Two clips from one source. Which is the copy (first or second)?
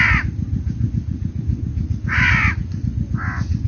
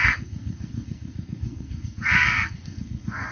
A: second